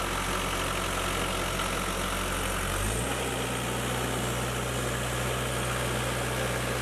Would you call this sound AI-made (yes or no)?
no